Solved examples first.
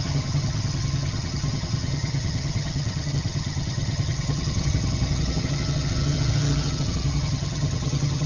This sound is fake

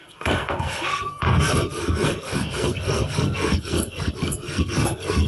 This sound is fake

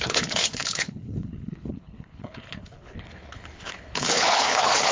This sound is fake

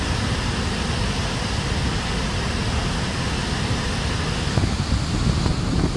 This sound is real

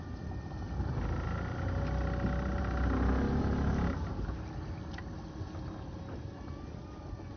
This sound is real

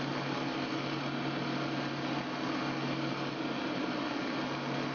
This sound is real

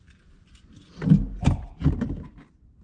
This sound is real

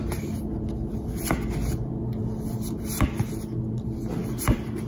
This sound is real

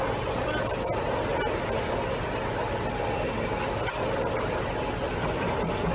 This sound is real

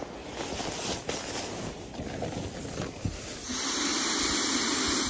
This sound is real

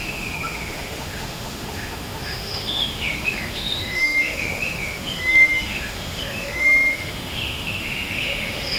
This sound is fake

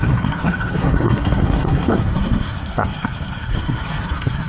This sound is fake